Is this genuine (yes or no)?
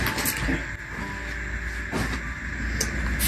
yes